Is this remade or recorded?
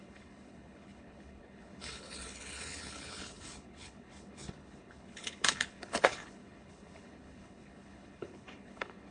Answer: remade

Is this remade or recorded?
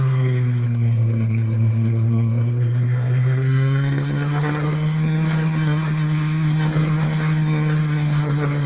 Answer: remade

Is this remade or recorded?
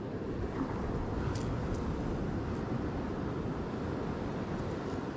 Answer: remade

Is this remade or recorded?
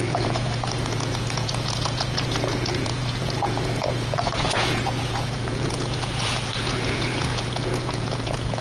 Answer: remade